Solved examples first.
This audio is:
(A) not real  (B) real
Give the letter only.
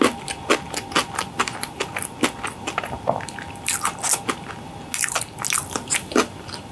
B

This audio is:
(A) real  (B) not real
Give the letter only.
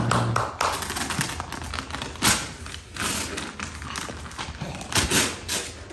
A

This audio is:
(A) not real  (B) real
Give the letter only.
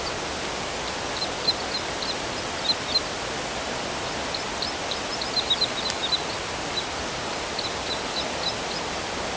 B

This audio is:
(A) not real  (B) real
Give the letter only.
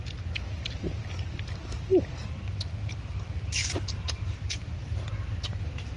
B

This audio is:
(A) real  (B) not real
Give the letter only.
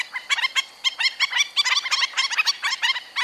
A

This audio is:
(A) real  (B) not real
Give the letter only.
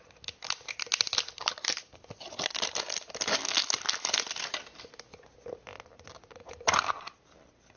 A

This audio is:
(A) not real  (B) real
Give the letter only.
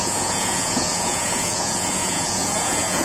A